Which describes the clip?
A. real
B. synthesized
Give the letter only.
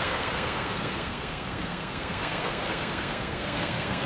B